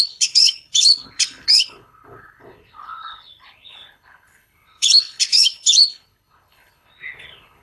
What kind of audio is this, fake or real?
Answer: fake